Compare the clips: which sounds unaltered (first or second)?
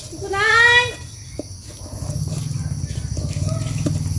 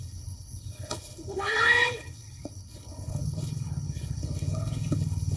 first